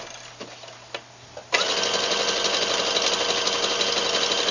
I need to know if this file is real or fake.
real